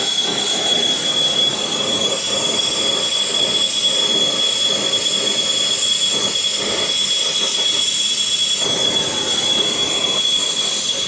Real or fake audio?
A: real